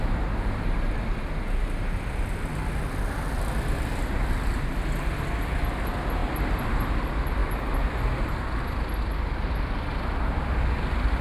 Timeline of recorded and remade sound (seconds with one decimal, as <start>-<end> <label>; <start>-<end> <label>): 0.0-6.2 recorded; 6.2-6.7 remade; 6.7-11.2 recorded